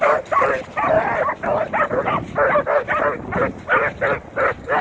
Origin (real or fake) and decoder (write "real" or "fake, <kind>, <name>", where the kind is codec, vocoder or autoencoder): fake, vocoder, BigVGAN v2